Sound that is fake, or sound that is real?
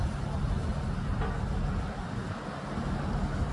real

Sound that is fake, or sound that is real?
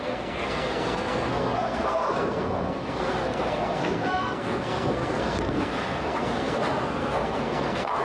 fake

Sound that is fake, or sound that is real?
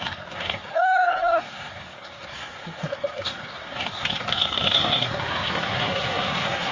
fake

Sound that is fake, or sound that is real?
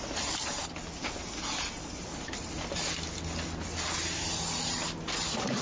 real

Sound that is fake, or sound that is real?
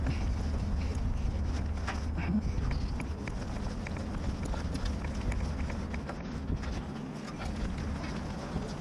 real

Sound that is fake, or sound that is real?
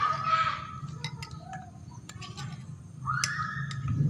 real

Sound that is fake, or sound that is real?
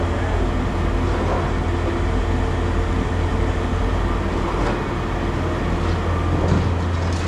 real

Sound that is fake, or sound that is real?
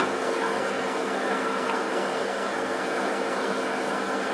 fake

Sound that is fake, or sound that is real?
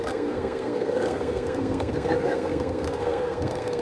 fake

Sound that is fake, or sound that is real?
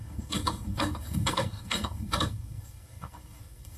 fake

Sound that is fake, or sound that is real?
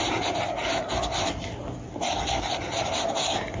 real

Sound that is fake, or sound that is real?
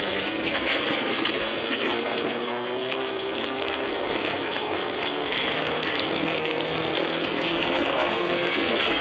fake